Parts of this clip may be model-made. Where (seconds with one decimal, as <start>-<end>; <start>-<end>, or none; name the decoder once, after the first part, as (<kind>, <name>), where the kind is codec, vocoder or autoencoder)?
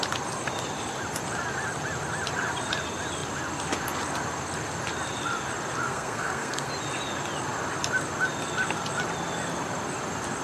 5.9-6.7 (codec, SNAC)